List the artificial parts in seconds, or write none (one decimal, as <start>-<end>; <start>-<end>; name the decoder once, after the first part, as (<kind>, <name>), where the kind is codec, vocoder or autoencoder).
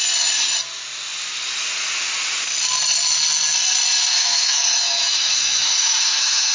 4.1-6.5 (autoencoder, DAC-VAE)